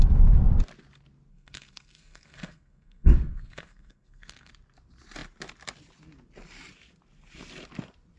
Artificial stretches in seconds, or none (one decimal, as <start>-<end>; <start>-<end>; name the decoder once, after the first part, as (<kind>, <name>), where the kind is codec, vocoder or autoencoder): 1.3-4.5 (codec, SNAC)